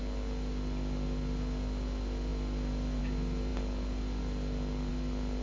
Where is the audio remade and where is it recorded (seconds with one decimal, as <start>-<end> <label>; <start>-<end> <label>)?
0.0-5.4 recorded